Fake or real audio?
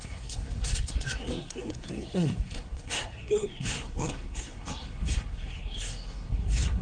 fake